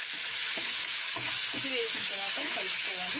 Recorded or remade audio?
remade